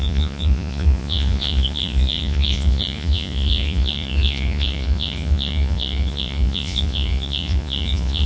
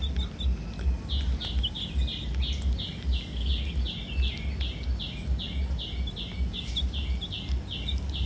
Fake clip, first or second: first